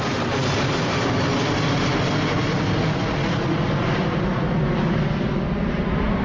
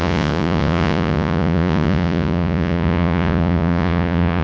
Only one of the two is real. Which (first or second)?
first